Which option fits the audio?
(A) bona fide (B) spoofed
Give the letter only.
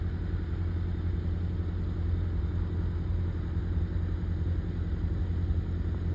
A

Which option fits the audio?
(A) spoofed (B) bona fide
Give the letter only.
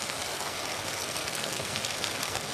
A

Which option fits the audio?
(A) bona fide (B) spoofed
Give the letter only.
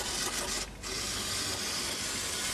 A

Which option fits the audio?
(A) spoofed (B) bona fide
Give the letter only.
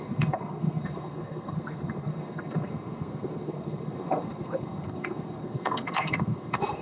A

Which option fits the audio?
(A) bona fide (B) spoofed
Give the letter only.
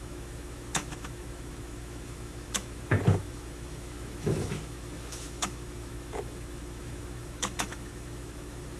B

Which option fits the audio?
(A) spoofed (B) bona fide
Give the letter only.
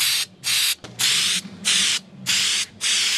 B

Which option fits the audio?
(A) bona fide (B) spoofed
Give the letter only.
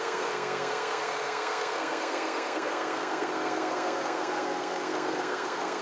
B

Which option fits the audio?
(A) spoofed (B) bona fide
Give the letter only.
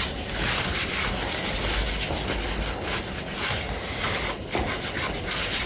B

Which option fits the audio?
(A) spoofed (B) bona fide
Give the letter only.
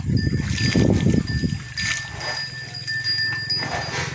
B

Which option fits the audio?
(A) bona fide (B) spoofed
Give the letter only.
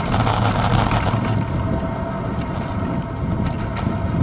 A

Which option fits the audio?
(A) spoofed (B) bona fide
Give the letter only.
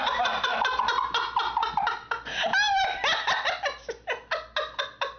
B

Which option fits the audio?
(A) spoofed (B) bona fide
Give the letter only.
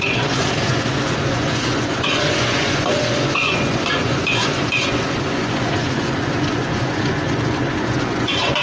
A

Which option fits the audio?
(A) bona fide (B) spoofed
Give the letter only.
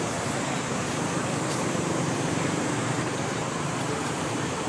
B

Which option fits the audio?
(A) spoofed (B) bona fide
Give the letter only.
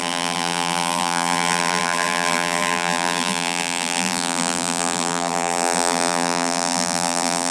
A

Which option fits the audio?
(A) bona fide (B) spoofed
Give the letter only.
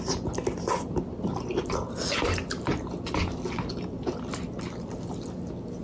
A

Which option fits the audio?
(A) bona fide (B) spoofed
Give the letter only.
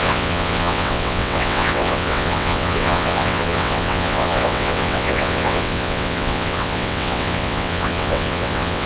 B